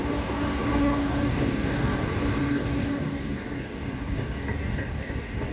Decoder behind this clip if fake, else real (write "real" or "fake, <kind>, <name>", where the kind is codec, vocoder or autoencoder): fake, codec, DAC